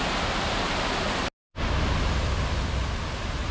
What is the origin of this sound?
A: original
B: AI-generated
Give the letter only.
A